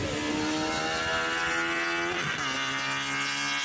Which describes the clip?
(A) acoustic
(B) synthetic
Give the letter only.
A